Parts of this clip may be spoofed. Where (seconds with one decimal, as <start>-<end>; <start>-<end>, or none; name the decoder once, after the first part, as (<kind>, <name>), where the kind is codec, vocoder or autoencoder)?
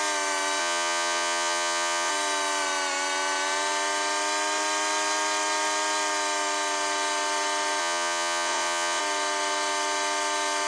0.6-2.1 (vocoder, Vocos); 7.8-9.0